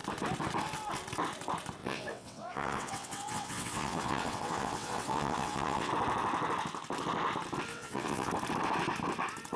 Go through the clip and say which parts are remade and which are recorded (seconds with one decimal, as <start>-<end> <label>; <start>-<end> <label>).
0.0-1.8 recorded; 1.8-5.9 remade; 5.9-7.7 recorded; 7.7-8.3 remade; 8.3-9.6 recorded